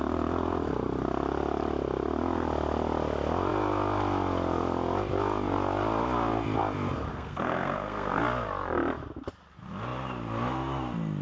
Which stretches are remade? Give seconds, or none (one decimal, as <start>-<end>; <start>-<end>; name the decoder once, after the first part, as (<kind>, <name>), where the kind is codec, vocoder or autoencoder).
7.1-8.2 (codec, SNAC)